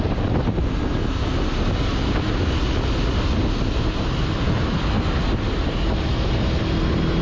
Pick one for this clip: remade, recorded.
recorded